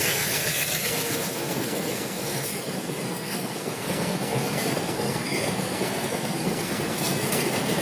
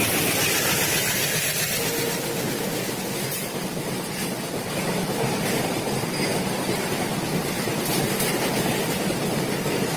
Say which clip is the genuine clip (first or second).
second